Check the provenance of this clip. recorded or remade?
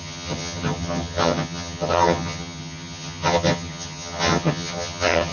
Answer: remade